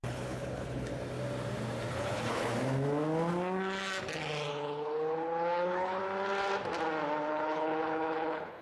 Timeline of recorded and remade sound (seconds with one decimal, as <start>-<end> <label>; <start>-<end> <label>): 0.0-0.9 remade; 0.9-1.9 recorded; 1.9-2.5 remade; 2.5-4.5 recorded; 4.5-6.0 remade; 6.0-7.3 recorded; 7.3-8.6 remade

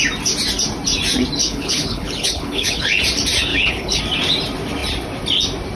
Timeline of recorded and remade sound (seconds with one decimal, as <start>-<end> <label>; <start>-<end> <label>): 0.0-1.4 recorded; 1.4-3.0 remade; 3.0-3.5 recorded; 3.5-4.0 remade; 4.0-5.8 recorded

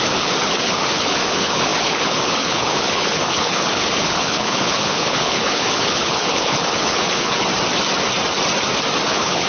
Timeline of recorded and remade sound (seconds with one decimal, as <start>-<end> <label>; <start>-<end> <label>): 0.0-7.5 remade; 7.5-9.1 recorded; 9.1-9.5 remade

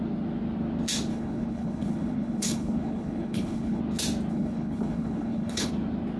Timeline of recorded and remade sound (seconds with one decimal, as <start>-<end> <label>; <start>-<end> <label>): 0.0-1.1 recorded; 1.1-3.8 remade; 3.8-4.3 recorded; 4.3-5.7 remade; 5.7-6.2 recorded

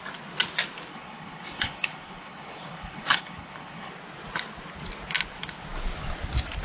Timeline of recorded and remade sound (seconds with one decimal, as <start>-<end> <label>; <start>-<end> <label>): 0.0-0.9 recorded; 0.9-3.9 remade; 3.9-6.6 recorded

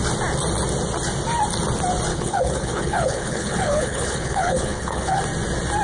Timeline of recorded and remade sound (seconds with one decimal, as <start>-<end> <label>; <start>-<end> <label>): 0.0-2.1 recorded; 2.1-5.2 remade; 5.2-5.8 recorded